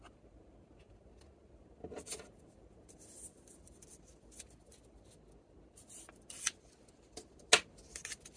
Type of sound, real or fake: real